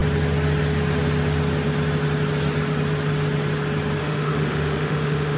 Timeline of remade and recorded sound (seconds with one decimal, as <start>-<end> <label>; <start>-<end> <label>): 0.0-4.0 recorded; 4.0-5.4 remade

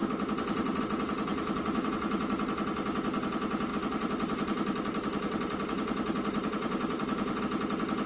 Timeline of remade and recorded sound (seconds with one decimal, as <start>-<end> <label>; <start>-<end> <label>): 0.0-0.8 remade; 0.8-1.3 recorded; 1.3-1.9 remade; 1.9-3.7 recorded; 3.7-7.4 remade; 7.4-8.1 recorded

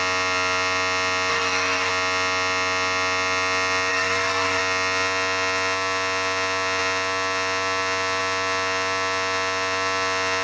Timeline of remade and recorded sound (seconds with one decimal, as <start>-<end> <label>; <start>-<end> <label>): 0.0-1.3 recorded; 1.3-1.9 remade; 1.9-3.9 recorded; 3.9-4.6 remade; 4.6-10.4 recorded

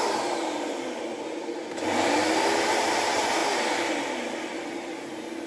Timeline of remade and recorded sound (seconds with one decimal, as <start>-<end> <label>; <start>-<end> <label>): 0.0-5.5 recorded

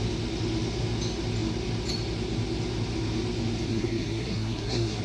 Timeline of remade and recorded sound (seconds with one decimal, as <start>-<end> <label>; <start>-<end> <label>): 0.0-3.7 recorded; 3.7-5.0 remade

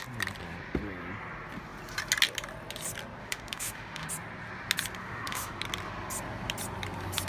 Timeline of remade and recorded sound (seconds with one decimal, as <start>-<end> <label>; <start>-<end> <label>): 0.0-3.2 recorded; 3.2-4.1 remade; 4.1-5.0 recorded; 5.0-5.6 remade; 5.6-7.3 recorded

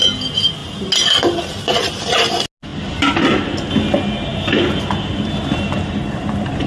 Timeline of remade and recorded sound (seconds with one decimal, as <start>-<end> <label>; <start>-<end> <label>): 0.0-6.7 recorded